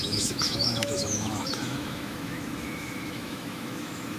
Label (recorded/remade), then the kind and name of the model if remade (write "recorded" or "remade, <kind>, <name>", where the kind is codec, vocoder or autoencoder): remade, autoencoder, DAC-VAE